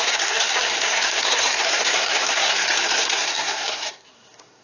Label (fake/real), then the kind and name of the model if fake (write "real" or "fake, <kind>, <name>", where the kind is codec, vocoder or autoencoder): fake, codec, SNAC